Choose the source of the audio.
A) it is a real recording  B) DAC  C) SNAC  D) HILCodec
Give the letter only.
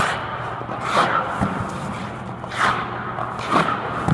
A